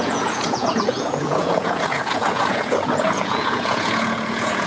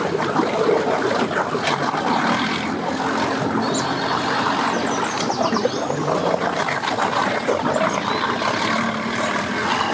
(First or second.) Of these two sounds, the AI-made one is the first